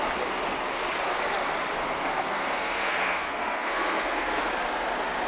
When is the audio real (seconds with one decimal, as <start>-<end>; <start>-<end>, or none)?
0.0-1.8; 4.4-5.3